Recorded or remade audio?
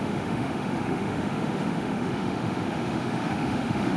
remade